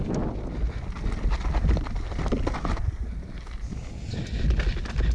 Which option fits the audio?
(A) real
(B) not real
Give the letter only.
A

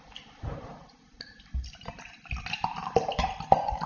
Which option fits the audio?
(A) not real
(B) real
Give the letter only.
B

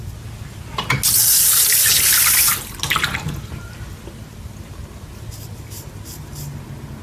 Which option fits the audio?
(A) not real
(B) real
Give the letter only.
B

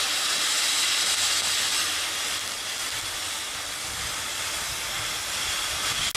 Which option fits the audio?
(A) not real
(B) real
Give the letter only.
B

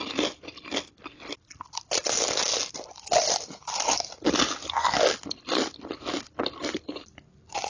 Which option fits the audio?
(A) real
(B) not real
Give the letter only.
A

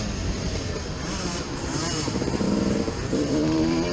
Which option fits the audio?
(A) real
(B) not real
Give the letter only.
B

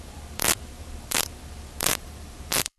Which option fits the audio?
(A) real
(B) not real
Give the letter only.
B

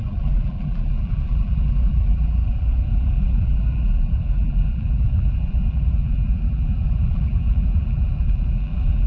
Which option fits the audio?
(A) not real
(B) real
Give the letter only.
A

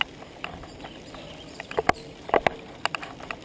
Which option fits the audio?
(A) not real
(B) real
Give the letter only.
B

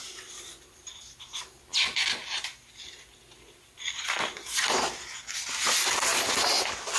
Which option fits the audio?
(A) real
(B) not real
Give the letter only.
A